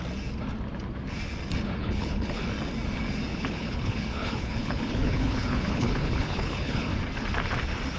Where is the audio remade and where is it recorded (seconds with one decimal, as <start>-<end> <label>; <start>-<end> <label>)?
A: 0.0-1.8 recorded; 1.8-2.4 remade; 2.4-3.3 recorded; 3.3-6.9 remade; 6.9-8.0 recorded